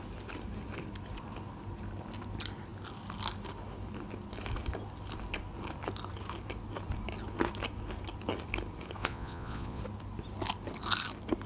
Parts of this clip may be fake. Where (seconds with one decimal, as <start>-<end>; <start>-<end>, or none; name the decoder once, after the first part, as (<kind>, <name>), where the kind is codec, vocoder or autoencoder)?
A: 9.0-9.8 (vocoder, Vocos)